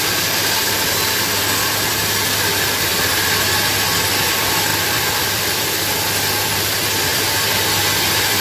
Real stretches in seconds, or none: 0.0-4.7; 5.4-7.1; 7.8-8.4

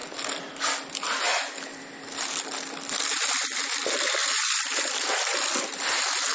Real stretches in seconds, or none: 0.0-0.5; 1.3-1.8

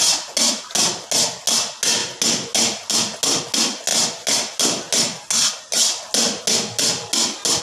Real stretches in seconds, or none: 0.0-7.6

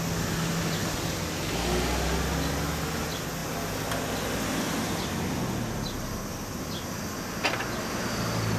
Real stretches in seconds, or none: 0.0-8.6